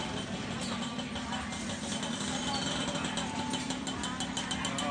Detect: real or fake real